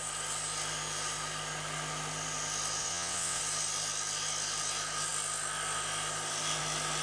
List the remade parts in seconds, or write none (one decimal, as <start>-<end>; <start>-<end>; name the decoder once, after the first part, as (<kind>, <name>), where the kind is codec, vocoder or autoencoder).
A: 2.8-3.4 (vocoder, WaveNeXt)